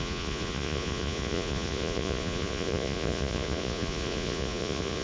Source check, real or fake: fake